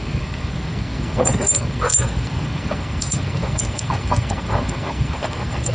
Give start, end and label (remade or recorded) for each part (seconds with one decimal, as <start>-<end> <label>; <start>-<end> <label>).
0.0-5.7 remade